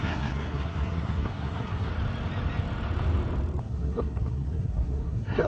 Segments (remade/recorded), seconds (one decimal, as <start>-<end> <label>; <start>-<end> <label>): 0.0-1.9 remade; 1.9-3.6 recorded; 3.6-5.5 remade